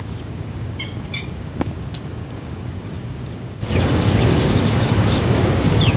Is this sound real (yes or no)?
no